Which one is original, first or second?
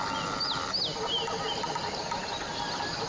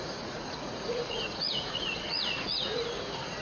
first